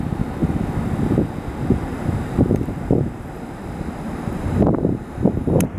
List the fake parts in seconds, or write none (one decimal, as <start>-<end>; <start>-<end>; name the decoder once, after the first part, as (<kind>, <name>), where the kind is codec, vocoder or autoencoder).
1.9-5.8 (vocoder, BigVGAN v2)